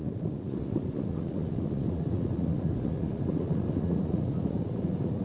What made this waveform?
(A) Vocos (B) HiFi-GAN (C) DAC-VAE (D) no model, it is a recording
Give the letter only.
A